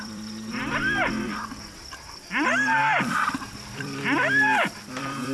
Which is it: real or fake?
fake